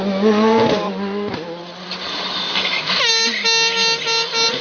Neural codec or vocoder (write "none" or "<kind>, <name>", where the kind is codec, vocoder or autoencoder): none